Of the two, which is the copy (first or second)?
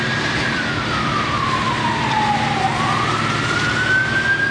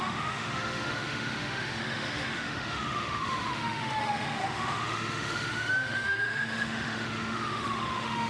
second